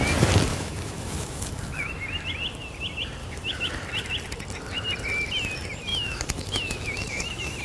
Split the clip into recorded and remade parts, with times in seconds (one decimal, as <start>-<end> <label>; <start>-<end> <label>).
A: 0.0-0.5 recorded; 0.5-1.9 remade; 1.9-3.2 recorded; 3.2-3.7 remade; 3.7-5.9 recorded; 5.9-7.6 remade